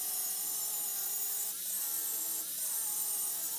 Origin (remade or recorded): recorded